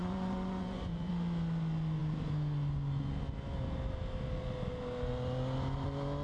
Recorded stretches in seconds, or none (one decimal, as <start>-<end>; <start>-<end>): 1.1-6.2